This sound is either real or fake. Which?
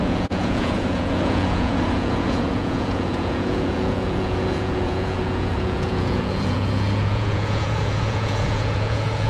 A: fake